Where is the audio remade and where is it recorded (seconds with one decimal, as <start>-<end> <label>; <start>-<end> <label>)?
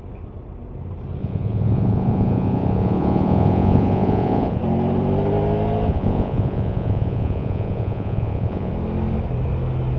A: 0.0-1.2 recorded; 1.2-4.6 remade; 4.6-5.9 recorded; 5.9-8.7 remade; 8.7-10.0 recorded